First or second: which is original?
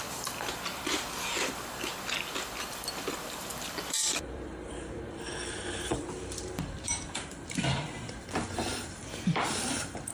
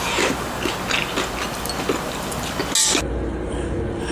second